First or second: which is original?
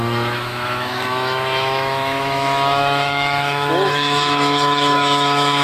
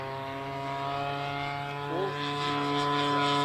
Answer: second